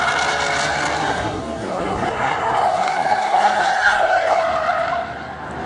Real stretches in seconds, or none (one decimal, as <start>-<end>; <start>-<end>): 0.0-1.0; 4.4-5.7